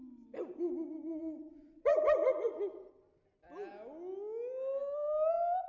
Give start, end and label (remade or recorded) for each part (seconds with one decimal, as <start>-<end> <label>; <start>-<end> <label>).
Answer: 0.0-1.1 recorded; 1.1-2.9 remade; 2.9-5.7 recorded